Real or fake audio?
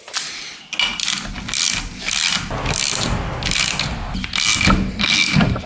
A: real